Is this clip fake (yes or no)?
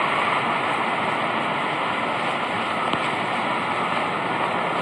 no